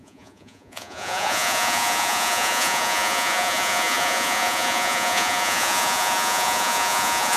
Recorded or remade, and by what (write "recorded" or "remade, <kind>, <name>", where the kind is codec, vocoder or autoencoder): remade, vocoder, Vocos